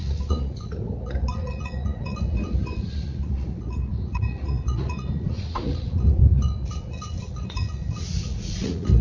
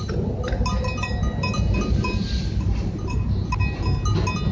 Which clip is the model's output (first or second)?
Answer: first